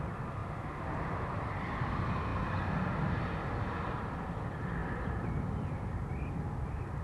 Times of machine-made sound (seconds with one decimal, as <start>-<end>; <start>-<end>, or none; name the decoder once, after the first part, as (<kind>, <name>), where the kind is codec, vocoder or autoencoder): 0.0-0.4 (vocoder, BigVGAN v2); 0.9-2.3; 3.9-7.0

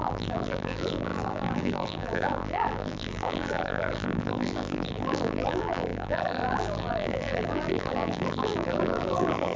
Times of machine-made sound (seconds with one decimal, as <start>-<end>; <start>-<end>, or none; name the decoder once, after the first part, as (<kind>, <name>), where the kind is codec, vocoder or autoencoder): 0.0-9.6 (vocoder, BigVGAN v2)

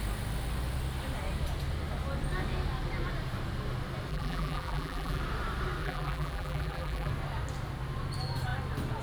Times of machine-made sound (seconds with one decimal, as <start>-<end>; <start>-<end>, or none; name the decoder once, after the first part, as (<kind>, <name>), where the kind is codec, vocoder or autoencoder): 4.1-5.2 (vocoder, BigVGAN v2); 5.8-7.1

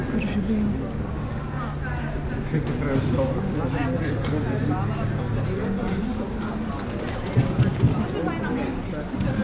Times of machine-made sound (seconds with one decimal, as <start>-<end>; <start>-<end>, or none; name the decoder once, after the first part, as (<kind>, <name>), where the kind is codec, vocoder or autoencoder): 5.8-6.4 (vocoder, BigVGAN v2)

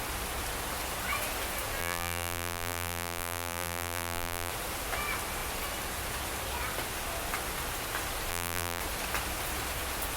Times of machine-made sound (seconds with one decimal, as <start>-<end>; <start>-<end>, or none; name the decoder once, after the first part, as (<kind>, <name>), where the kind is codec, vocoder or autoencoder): 1.8-4.5 (vocoder, BigVGAN v2); 8.3-8.8

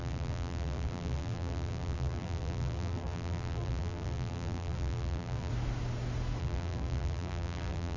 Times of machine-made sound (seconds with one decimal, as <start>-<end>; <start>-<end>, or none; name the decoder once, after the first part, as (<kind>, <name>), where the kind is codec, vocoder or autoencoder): 0.0-5.5 (vocoder, BigVGAN v2); 6.4-8.0